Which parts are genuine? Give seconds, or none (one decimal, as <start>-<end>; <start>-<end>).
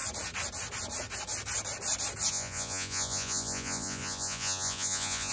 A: 0.0-2.3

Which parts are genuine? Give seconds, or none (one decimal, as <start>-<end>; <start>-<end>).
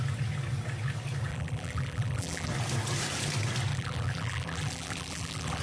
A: 0.0-1.3; 2.5-3.7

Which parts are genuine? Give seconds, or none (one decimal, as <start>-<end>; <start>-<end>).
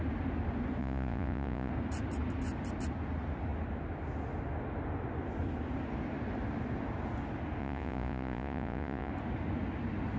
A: 0.0-0.8; 1.7-7.6; 9.1-10.2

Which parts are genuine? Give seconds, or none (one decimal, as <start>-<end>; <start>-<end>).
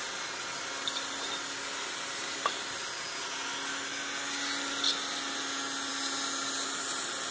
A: 0.0-7.3